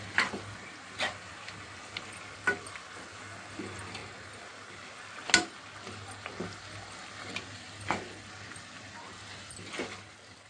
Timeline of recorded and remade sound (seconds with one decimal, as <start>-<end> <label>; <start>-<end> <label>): 0.0-10.5 recorded